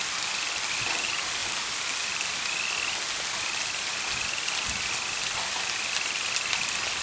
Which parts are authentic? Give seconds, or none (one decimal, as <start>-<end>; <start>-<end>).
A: 0.0-7.0